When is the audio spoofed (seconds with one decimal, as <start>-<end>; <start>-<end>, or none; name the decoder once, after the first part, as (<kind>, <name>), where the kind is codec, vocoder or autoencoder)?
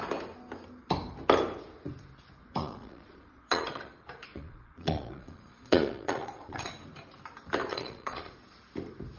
2.6-3.9 (vocoder, Vocos); 4.3-6.7; 7.7-8.3